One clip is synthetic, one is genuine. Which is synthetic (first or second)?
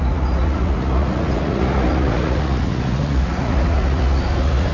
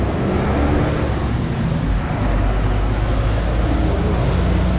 first